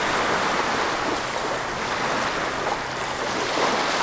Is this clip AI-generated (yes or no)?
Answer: no